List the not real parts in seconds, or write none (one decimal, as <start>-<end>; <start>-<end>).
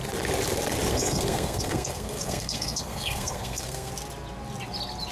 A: 0.9-3.9